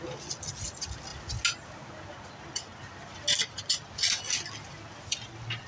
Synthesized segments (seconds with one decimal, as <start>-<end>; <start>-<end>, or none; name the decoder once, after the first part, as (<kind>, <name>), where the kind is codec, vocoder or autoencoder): none